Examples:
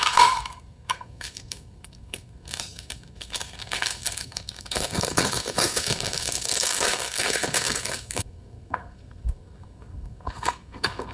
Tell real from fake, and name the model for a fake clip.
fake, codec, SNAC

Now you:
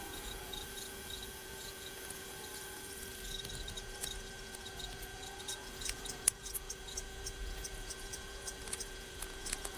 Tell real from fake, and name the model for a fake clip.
fake, vocoder, Vocos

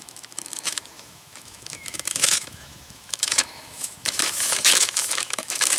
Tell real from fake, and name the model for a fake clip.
fake, autoencoder, DAC-VAE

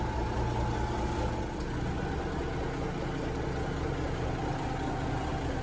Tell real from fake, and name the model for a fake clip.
real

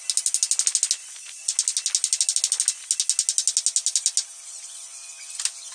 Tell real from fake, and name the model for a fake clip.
real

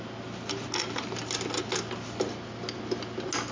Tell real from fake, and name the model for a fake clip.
real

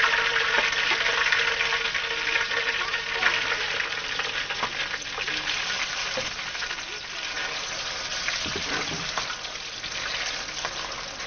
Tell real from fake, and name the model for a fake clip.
real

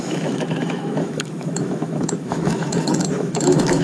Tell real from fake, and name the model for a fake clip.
fake, autoencoder, DAC-VAE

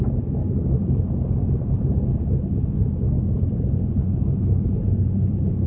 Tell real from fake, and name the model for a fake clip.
fake, vocoder, BigVGAN v2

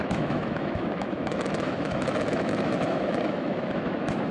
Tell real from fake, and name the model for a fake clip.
fake, autoencoder, DAC-VAE